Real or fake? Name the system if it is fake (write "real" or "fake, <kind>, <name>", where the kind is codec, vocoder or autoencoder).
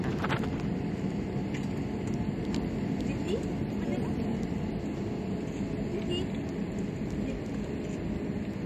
real